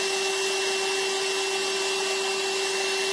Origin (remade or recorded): recorded